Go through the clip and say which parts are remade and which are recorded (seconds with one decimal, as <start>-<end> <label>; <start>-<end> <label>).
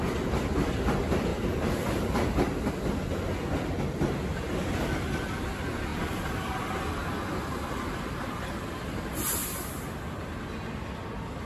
0.0-1.3 recorded; 1.3-2.7 remade; 2.7-5.9 recorded; 5.9-6.7 remade; 6.7-11.5 recorded